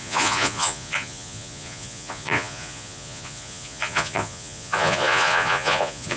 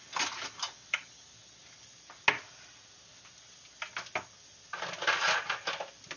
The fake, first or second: first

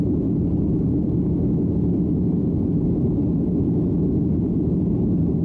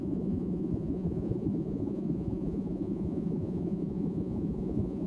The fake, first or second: second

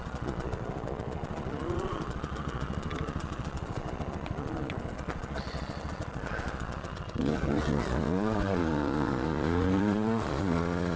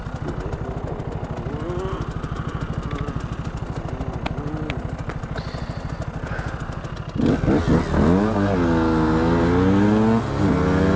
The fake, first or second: first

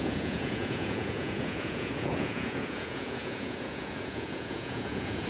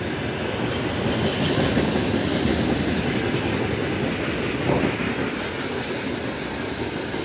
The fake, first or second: first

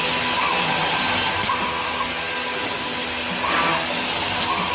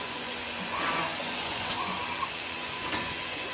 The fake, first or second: second